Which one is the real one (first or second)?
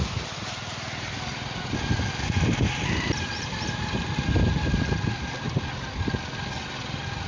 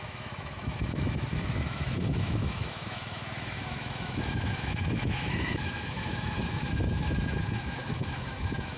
first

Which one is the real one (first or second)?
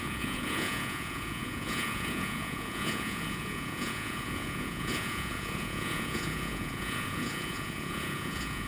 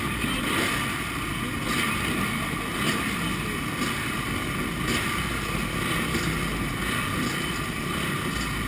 second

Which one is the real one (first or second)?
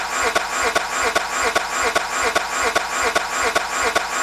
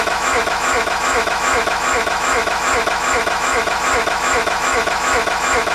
first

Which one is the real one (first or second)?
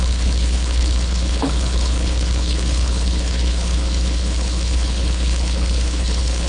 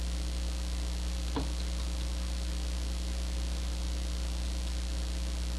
second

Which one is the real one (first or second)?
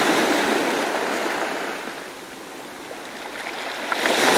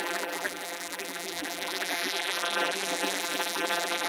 first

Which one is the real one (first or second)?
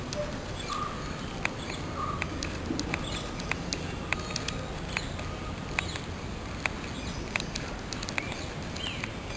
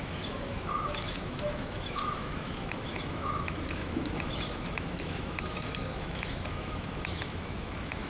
first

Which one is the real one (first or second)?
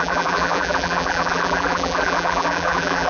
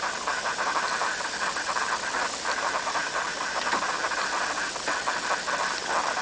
second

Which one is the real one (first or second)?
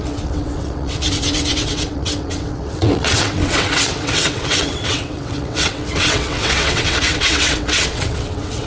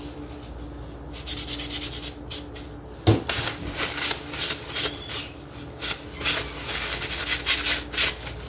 second